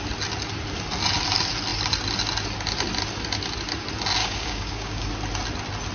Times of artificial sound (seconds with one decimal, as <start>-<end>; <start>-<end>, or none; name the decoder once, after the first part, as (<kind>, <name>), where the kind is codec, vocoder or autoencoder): 4.2-5.1 (codec, DAC)